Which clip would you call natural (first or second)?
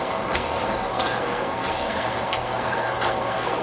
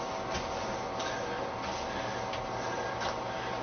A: second